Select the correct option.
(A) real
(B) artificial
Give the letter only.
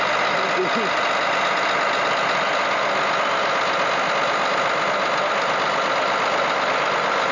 A